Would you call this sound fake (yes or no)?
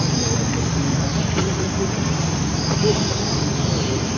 no